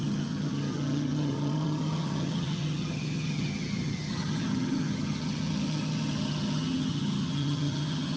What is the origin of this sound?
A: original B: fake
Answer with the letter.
B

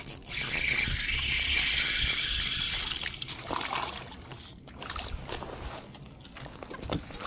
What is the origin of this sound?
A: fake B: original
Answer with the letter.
B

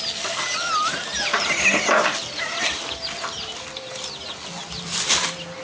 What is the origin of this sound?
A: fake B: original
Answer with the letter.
B